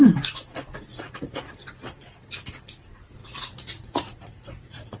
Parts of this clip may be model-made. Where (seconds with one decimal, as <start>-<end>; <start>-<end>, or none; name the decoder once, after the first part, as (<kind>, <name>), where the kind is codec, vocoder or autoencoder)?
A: 0.9-1.4 (vocoder, Vocos); 3.2-5.0